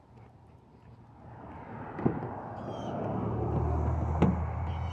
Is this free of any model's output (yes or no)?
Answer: yes